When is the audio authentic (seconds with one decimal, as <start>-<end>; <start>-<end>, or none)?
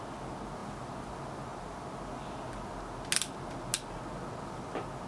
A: 0.0-5.1